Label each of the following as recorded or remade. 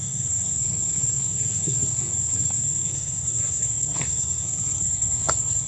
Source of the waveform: remade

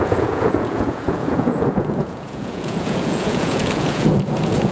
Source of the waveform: remade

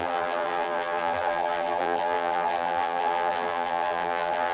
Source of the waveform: remade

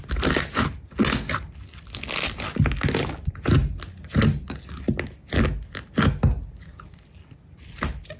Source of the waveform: recorded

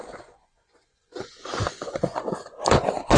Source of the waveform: remade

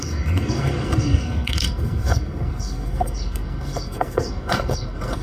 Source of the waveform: remade